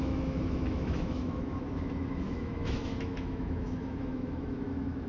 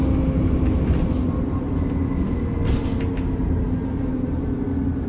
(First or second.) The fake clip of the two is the first